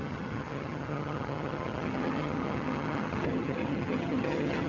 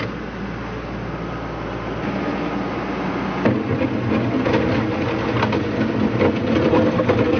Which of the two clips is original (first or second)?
second